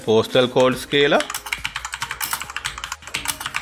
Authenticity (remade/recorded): recorded